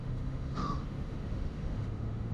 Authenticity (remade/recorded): remade